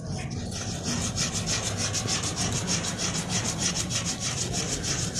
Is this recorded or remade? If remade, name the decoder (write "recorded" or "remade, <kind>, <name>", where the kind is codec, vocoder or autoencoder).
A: recorded